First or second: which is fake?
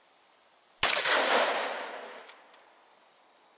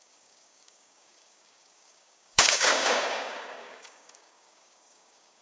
second